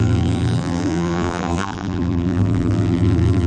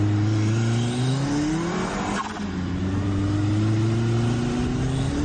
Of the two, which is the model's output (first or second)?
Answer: first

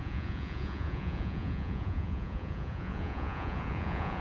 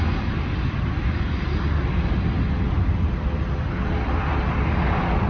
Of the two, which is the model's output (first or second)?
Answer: first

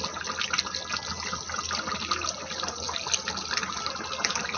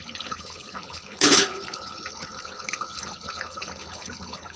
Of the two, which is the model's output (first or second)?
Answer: second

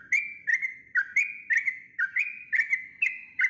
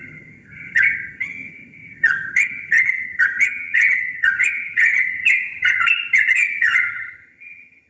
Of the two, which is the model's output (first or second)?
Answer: second